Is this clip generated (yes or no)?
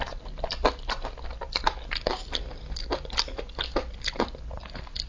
no